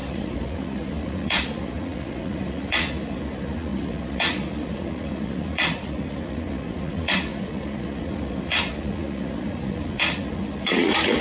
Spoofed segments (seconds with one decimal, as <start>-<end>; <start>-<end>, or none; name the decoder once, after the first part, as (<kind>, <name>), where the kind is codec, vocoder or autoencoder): 0.0-11.2 (vocoder, Vocos)